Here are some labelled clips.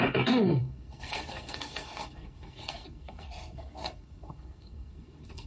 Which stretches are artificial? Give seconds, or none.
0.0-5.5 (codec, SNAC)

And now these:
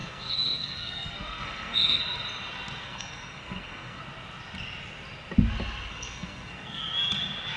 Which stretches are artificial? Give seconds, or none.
0.0-2.0 (codec, SNAC); 2.8-4.0; 5.9-6.8

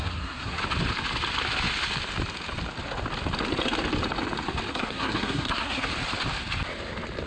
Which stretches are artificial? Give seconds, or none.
0.0-0.6 (codec, SNAC); 4.7-5.9

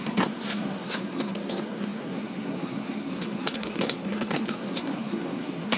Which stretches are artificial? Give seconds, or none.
0.0-5.8 (codec, SNAC)

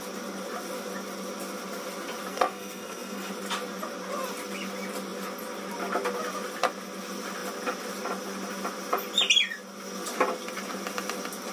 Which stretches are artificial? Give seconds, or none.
2.3-3.3 (codec, SNAC)

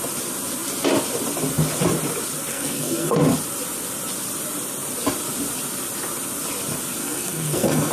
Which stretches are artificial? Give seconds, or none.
2.5-3.2 (codec, SNAC); 7.0-7.9

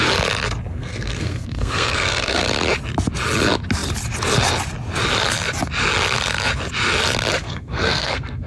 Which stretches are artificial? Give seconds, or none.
0.7-2.4 (codec, SNAC); 7.4-8.5

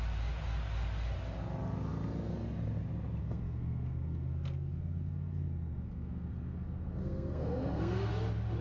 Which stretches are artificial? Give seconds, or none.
3.2-8.1 (codec, SNAC)